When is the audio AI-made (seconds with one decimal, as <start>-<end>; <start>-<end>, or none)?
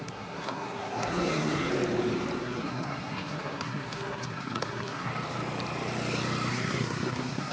0.0-1.7; 2.4-5.1; 6.5-7.5